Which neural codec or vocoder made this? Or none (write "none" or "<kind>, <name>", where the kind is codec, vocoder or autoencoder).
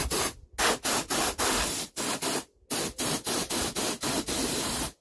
none